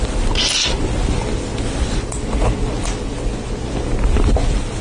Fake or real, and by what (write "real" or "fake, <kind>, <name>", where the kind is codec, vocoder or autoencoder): real